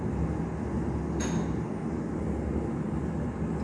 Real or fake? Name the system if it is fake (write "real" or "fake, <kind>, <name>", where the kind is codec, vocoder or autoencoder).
real